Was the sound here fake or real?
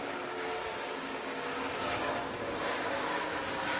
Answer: fake